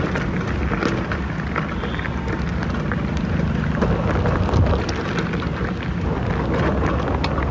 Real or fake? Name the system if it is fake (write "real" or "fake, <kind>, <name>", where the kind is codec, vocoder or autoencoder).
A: real